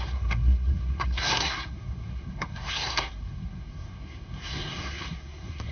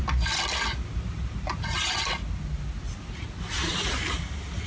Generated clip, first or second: first